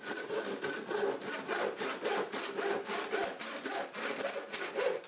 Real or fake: real